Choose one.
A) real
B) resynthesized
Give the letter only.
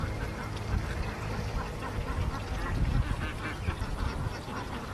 A